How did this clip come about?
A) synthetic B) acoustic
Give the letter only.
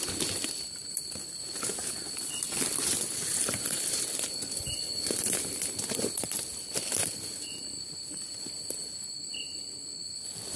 B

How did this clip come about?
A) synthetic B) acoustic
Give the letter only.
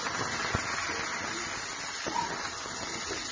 B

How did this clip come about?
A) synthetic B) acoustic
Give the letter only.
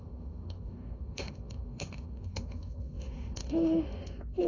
A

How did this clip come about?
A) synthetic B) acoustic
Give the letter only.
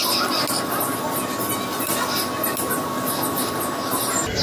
B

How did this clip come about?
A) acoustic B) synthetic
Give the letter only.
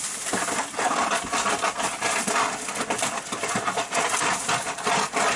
A